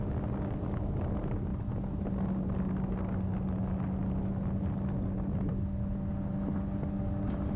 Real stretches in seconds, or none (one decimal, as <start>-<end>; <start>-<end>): 0.0-7.6